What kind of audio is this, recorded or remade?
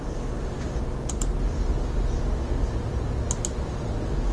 recorded